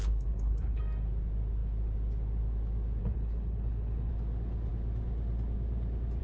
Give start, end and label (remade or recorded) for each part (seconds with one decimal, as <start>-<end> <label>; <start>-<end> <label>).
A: 0.0-0.8 remade; 0.8-3.0 recorded; 3.0-4.1 remade; 4.1-6.2 recorded